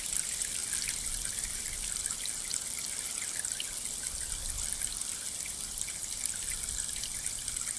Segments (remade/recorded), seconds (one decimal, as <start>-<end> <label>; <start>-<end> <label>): 0.0-0.6 remade; 0.6-1.3 recorded; 1.3-7.8 remade